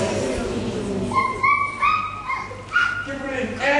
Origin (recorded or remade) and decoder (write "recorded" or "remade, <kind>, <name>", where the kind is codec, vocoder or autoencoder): recorded